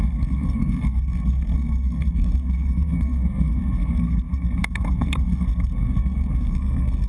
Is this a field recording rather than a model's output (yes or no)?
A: no